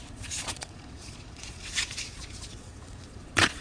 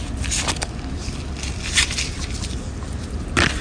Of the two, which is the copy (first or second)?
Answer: first